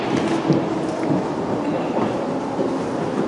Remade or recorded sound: recorded